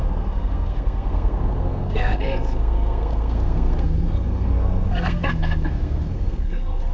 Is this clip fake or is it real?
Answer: fake